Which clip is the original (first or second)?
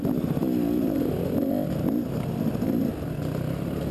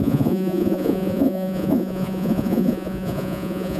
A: first